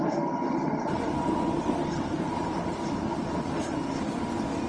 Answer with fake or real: real